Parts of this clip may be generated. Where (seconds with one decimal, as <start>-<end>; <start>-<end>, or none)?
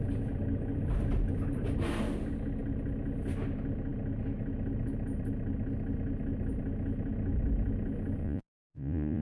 8.2-9.2